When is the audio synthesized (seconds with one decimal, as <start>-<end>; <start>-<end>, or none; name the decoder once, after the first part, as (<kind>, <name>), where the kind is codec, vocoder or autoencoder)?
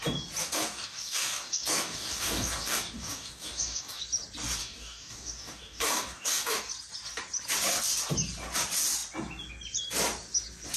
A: 0.4-4.0 (codec, DAC); 4.6-6.7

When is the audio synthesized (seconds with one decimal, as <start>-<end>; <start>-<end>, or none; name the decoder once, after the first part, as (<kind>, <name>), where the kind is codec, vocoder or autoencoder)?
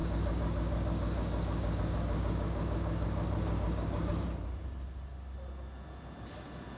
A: 0.0-4.1 (codec, DAC)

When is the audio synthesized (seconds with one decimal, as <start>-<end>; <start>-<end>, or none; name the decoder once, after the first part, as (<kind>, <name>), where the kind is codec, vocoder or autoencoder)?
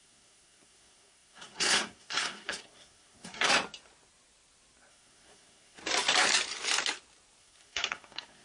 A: 0.0-3.5 (codec, SNAC); 4.9-5.8; 7.4-8.4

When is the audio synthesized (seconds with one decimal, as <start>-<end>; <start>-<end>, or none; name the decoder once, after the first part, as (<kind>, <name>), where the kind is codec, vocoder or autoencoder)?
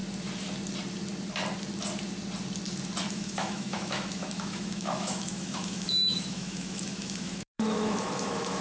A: 3.1-8.6 (autoencoder, DAC-VAE)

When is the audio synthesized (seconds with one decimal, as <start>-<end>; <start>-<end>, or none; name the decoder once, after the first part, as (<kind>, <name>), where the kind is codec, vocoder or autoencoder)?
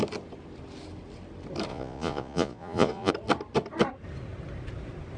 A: 1.7-3.1 (vocoder, Vocos)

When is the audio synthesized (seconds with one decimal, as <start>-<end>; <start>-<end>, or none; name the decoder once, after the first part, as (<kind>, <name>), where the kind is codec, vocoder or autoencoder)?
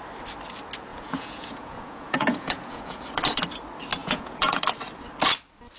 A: 0.9-3.0 (vocoder, Vocos); 4.0-4.6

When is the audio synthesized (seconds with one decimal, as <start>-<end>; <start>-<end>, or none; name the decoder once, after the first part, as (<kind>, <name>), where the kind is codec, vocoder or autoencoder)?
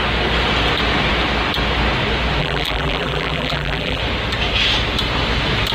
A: 2.4-4.0 (vocoder, BigVGAN v2)